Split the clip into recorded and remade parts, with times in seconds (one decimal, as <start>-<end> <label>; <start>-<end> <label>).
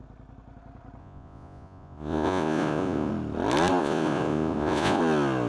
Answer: 0.0-1.0 recorded; 1.0-3.1 remade; 3.1-3.8 recorded; 3.8-5.0 remade; 5.0-5.5 recorded